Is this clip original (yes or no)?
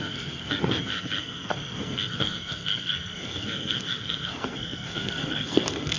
no